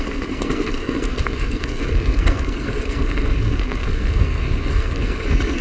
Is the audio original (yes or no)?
no